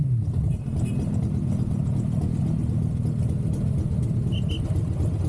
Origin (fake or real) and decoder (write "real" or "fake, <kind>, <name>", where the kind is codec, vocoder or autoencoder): real